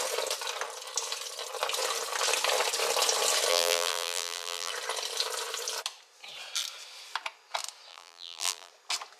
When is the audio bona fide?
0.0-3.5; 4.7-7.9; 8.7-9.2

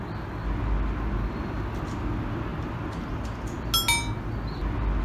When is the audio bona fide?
0.0-5.0

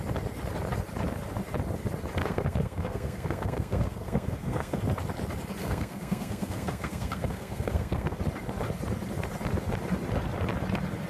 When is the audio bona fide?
0.0-2.2; 4.8-5.6; 8.2-11.1

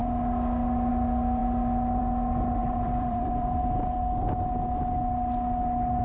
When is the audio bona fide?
0.0-2.6; 3.6-6.0